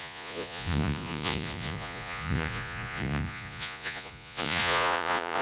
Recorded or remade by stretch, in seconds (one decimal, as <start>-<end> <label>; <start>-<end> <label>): 0.0-5.4 remade